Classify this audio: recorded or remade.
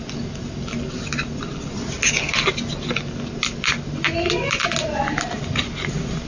recorded